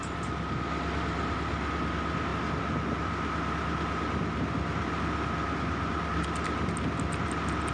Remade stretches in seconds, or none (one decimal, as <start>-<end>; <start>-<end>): none